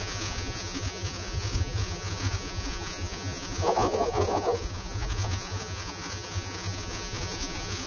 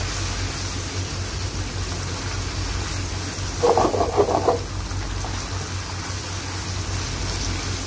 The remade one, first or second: first